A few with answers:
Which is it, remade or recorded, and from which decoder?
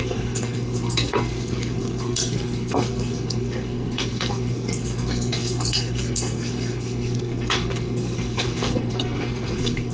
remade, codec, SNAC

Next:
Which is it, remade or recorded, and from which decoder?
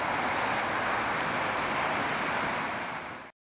recorded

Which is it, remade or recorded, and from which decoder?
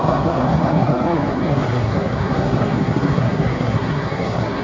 remade, codec, SNAC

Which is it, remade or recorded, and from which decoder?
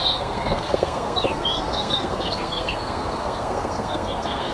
remade, codec, SNAC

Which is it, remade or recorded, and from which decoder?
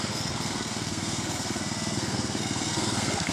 remade, codec, SNAC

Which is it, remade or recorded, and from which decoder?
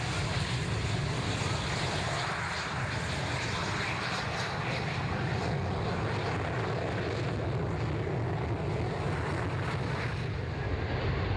recorded